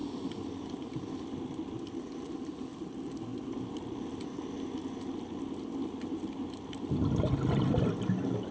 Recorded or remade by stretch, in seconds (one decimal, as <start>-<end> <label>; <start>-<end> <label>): 0.0-8.5 recorded

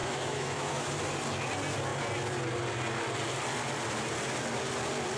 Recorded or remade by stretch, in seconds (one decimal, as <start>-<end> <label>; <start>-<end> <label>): 0.0-0.9 remade; 0.9-5.2 recorded